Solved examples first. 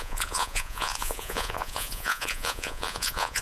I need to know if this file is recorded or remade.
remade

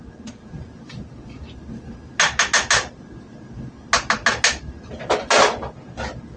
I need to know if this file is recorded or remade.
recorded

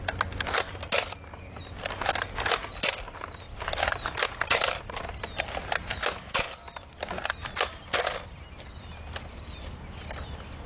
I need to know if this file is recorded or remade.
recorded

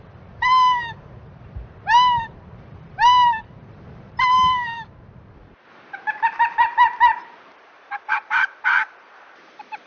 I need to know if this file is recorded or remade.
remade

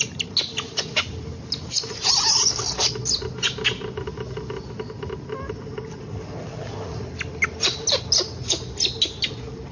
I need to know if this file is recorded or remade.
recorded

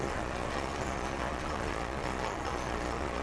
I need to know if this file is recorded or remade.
remade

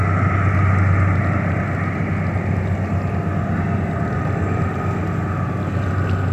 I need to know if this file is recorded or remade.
recorded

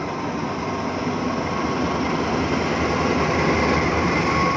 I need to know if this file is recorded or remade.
recorded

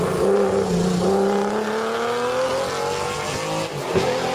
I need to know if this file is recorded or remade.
recorded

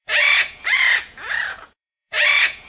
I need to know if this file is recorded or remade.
remade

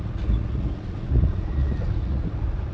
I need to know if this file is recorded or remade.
remade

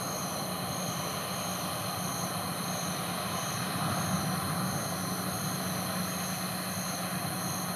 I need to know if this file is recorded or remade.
recorded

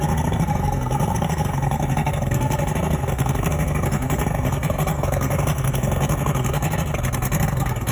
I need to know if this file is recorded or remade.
remade